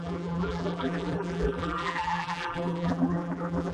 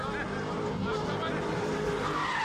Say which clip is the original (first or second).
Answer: second